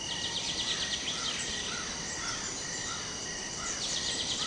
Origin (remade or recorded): remade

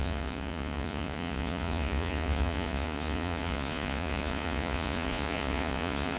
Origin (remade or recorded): remade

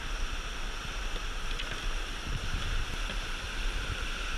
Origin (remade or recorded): recorded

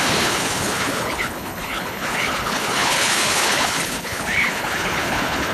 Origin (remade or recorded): remade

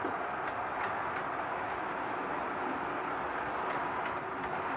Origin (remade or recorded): recorded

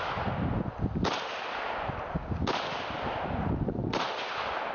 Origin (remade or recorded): recorded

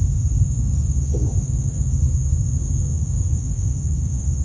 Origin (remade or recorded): remade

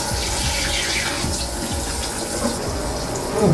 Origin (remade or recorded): remade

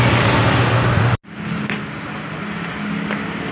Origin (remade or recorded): recorded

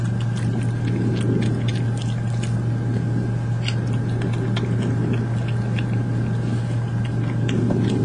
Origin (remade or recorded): recorded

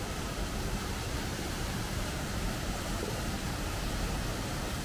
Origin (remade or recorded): remade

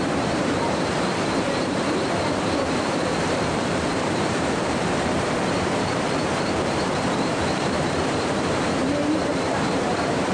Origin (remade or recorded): remade